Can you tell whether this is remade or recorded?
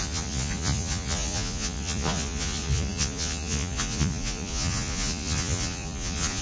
remade